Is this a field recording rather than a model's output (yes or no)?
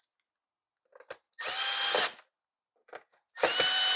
yes